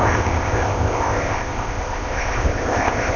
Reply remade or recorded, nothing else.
remade